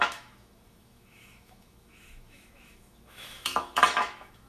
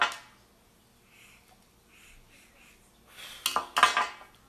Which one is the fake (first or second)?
first